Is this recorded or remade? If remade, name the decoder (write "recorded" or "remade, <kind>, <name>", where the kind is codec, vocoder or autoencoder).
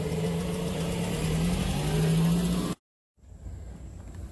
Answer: recorded